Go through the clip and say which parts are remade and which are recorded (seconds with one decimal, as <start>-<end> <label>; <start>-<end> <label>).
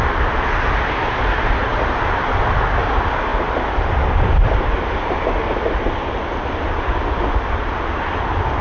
0.0-1.7 recorded; 1.7-2.4 remade; 2.4-3.3 recorded; 3.3-7.7 remade; 7.7-8.6 recorded